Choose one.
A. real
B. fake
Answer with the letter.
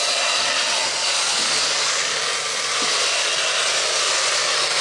A